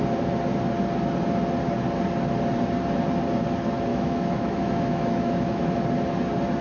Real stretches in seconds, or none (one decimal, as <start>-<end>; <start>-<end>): 0.0-3.9; 5.7-6.6